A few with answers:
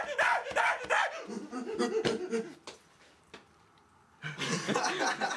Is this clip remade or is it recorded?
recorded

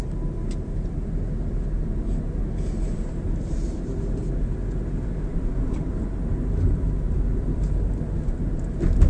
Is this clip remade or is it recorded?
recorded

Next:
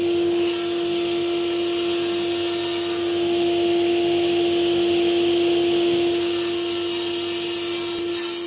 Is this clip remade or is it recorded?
recorded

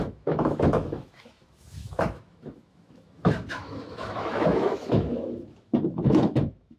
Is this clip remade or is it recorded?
remade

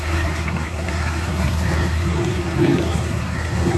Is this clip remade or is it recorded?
remade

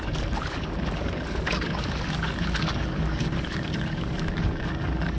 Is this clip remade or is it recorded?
remade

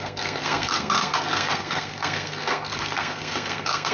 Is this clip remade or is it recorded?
remade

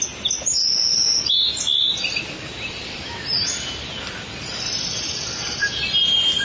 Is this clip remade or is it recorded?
recorded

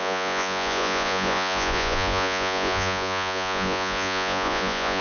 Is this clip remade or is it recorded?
remade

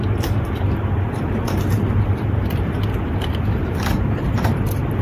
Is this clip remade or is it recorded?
recorded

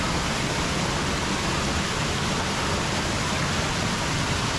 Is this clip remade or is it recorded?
recorded